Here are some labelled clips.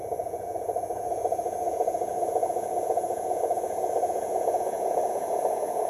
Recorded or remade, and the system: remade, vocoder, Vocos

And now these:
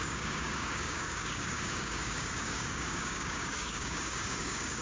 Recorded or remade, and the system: remade, codec, DAC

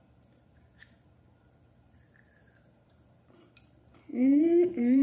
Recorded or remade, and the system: remade, vocoder, BigVGAN v2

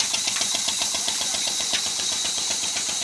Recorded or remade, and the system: remade, vocoder, Vocos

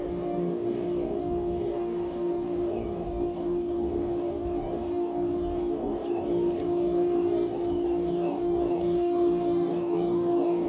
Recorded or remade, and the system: remade, codec, DAC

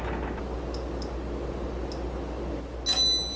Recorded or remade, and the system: recorded